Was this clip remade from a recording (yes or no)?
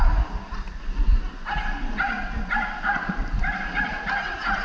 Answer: no